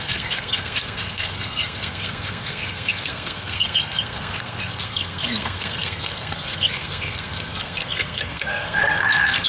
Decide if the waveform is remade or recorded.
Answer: remade